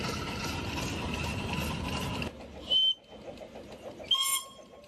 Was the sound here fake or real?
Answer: real